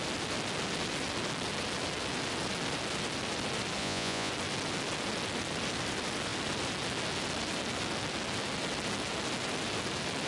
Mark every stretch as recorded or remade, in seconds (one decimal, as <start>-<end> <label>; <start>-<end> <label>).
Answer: 0.0-3.8 recorded; 3.8-4.3 remade; 4.3-10.3 recorded